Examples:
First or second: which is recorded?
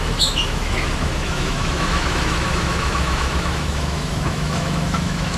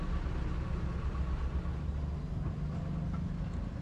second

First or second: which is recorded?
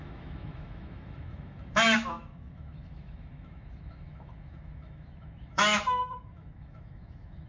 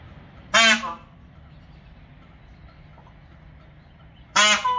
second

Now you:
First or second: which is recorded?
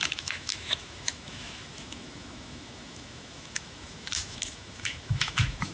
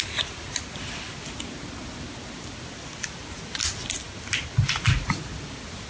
second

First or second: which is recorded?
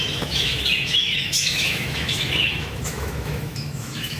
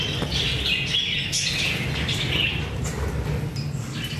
second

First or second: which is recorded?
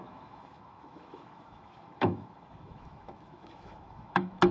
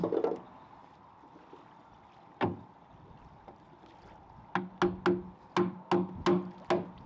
second